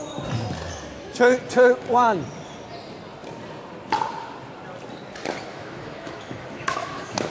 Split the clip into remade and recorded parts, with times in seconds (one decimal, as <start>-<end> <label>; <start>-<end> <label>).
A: 0.0-5.5 recorded; 5.5-7.3 remade